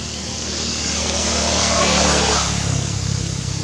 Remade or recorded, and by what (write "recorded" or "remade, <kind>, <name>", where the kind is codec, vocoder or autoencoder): remade, codec, SNAC